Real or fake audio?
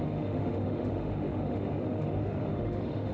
fake